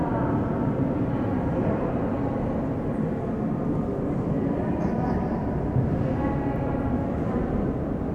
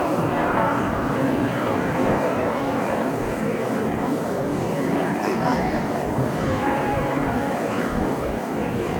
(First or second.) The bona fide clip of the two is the first